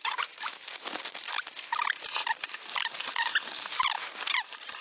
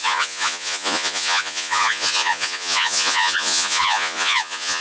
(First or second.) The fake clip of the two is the second